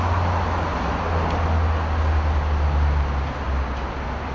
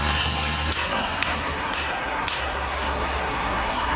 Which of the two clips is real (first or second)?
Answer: first